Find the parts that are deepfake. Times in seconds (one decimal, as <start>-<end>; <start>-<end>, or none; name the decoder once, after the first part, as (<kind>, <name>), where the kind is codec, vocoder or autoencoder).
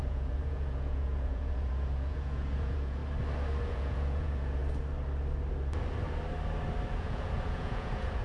0.0-3.0 (vocoder, Vocos); 3.6-4.6; 6.9-8.2